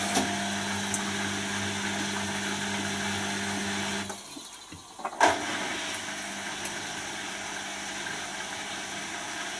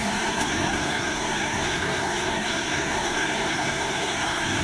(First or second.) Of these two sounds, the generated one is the second